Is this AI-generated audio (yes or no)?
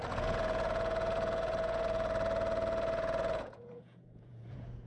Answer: yes